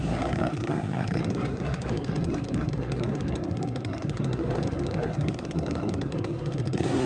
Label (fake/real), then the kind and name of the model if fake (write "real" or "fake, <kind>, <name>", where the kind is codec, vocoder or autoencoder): fake, codec, SNAC